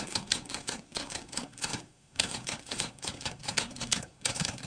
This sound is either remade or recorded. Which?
remade